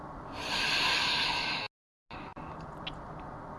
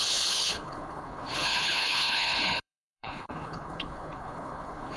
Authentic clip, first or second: first